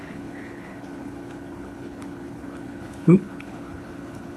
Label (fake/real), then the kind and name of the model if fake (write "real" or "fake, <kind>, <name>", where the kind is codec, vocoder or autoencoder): fake, codec, HILCodec